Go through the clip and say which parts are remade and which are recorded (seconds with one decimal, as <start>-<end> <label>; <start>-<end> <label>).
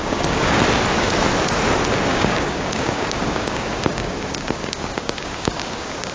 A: 0.0-0.6 remade; 0.6-2.1 recorded; 2.1-6.1 remade